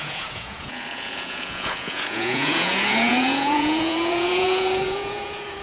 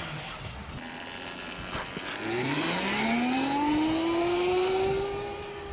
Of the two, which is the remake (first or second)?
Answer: first